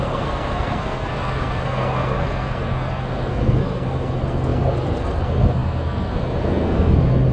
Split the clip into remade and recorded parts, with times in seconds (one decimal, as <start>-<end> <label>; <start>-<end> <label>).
0.0-7.3 remade